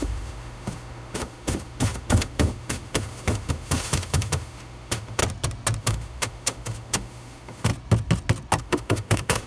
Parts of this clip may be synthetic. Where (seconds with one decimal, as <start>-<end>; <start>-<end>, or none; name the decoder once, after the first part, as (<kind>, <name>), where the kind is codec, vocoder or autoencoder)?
0.0-5.2 (autoencoder, DAC-VAE); 5.8-7.7; 8.6-9.5